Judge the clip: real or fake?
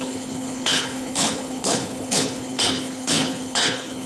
fake